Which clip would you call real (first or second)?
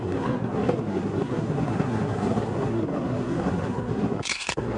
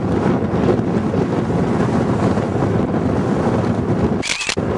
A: second